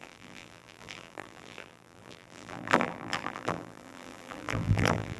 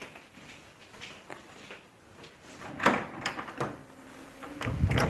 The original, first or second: second